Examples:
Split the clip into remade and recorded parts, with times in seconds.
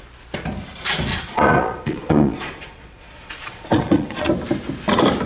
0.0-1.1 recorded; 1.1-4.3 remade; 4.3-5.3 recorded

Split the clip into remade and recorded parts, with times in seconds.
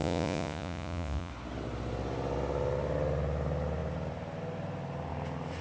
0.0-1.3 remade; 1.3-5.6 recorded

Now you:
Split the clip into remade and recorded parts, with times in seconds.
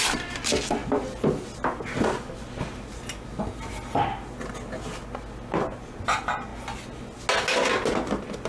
0.0-8.5 recorded